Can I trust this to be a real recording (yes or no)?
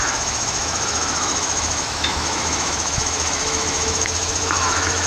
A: no